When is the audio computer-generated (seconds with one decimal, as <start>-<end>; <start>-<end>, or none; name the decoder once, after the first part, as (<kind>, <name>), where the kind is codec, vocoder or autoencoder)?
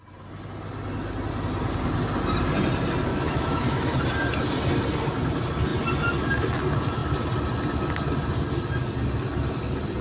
3.1-4.0 (autoencoder, DAC-VAE)